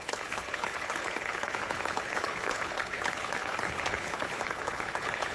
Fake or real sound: fake